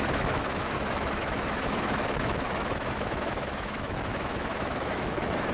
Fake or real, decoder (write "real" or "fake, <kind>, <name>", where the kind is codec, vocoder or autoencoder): fake, autoencoder, DAC-VAE